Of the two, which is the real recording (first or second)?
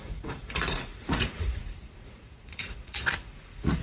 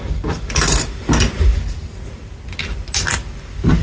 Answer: second